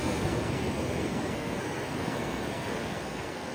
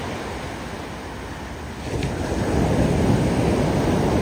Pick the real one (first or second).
second